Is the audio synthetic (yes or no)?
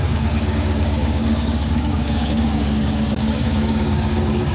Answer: yes